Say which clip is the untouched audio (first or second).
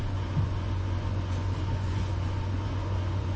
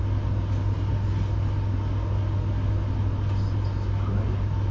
second